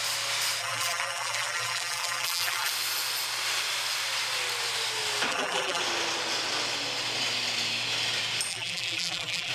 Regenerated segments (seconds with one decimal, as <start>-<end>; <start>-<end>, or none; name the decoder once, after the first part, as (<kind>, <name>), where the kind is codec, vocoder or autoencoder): 0.6-2.7 (vocoder, BigVGAN v2); 5.3-5.8; 8.5-9.5